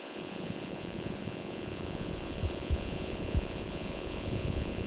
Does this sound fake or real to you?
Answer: fake